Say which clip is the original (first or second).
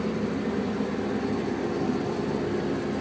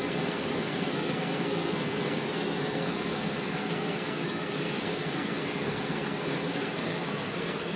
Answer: first